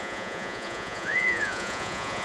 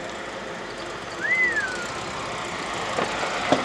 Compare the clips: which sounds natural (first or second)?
second